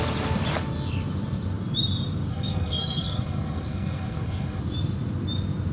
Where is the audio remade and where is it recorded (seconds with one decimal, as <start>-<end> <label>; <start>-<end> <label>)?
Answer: 0.0-2.3 recorded; 2.3-4.6 remade; 4.6-5.7 recorded